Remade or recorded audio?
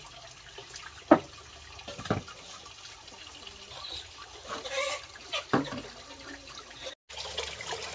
recorded